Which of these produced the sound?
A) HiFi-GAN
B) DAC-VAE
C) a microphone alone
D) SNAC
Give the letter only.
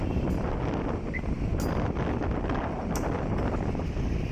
C